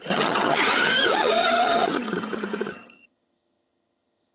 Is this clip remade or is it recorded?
remade